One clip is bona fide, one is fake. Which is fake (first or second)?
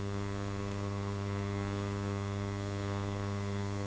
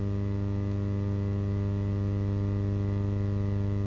first